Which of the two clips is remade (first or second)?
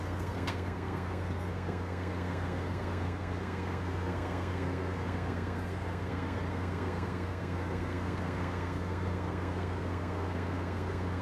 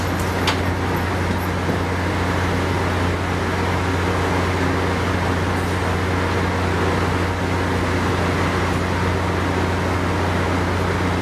first